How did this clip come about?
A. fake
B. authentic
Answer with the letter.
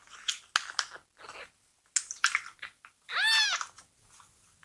B